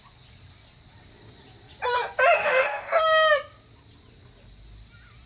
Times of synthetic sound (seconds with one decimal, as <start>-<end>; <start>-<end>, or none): 2.4-3.0